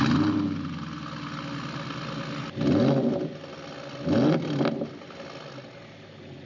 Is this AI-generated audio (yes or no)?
no